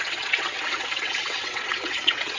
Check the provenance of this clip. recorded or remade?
remade